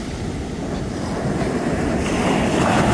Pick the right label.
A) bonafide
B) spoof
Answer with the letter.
B